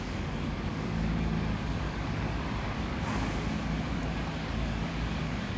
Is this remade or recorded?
remade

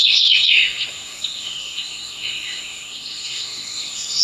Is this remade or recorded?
remade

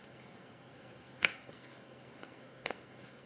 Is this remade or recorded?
remade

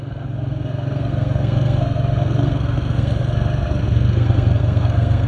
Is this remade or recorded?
remade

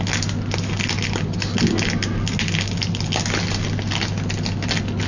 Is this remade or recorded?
recorded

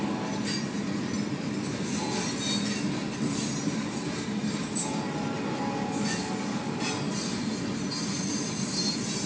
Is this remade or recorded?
recorded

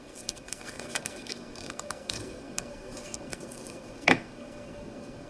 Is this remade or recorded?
remade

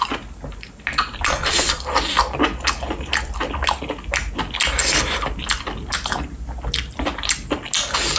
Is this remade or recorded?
recorded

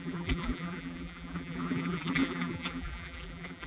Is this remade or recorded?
remade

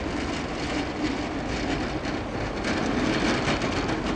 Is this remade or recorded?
recorded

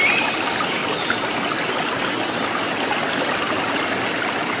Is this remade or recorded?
recorded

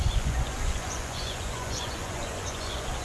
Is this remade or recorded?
remade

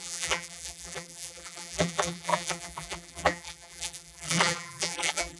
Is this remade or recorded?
remade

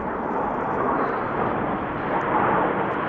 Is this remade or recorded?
remade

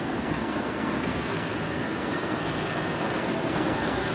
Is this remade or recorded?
remade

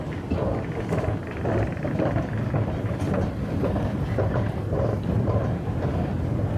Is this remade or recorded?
remade